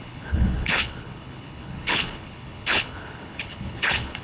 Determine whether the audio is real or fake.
fake